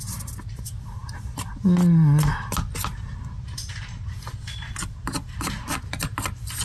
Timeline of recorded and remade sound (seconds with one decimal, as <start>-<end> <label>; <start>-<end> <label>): 0.0-6.6 recorded